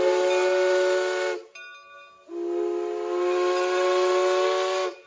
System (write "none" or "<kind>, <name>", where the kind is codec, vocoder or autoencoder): none